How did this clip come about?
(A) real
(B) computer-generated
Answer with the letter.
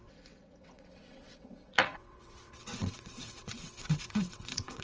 B